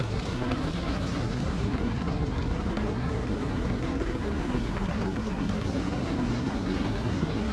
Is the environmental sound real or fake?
fake